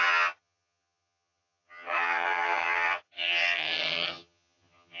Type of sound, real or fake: fake